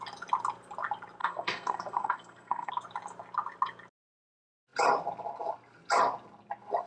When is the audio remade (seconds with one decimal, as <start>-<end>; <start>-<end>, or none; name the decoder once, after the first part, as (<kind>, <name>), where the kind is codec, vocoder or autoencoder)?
1.2-2.7 (codec, SNAC)